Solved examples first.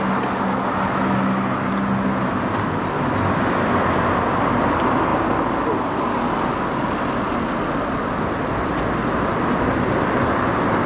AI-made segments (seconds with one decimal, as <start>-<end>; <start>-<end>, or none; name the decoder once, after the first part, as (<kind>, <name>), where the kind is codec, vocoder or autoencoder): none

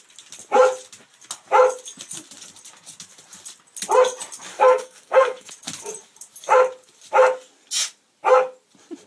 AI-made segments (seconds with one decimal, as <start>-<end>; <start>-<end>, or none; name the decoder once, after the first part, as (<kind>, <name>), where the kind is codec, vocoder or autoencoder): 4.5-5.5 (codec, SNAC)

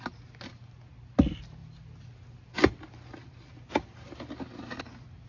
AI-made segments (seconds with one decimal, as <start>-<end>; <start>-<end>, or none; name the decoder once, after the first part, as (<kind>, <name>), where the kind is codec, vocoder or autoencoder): none